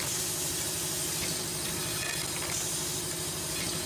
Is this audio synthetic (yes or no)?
no